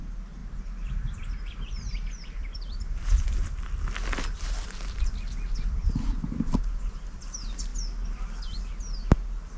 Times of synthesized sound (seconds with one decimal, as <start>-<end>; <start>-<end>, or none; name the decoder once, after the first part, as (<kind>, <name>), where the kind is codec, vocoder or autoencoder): 0.4-5.0 (vocoder, BigVGAN v2)